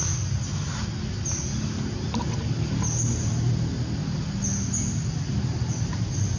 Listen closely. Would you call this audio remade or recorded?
recorded